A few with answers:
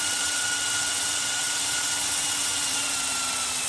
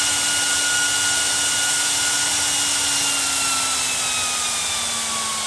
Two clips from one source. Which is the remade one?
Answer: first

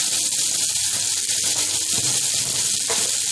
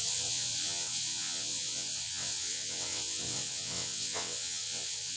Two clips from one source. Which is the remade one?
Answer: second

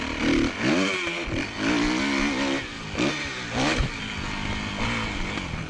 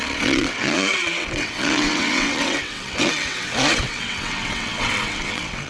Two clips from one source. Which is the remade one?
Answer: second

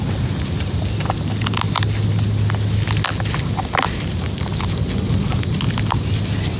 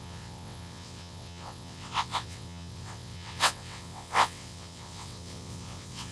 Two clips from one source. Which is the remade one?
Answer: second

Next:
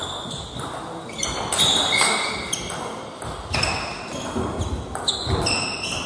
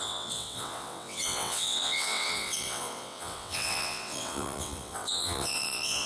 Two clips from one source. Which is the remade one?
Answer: second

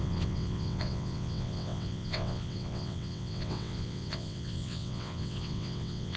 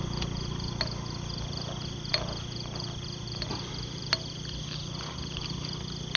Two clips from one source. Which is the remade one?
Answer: first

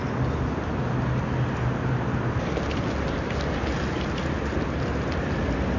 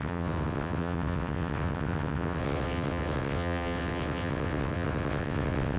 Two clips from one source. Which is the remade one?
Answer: second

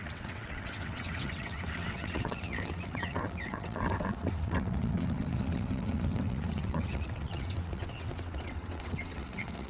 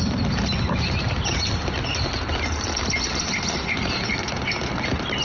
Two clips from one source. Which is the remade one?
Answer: first